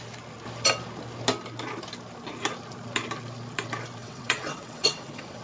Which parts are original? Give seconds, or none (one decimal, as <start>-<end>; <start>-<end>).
0.0-4.0